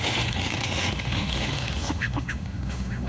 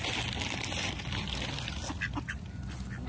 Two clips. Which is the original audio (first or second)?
second